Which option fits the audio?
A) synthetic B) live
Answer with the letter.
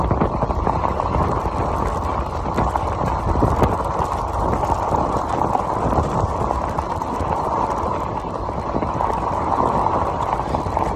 B